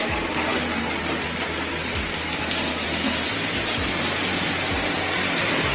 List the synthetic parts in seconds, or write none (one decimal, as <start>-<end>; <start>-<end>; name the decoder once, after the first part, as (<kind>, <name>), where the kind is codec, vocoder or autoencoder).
none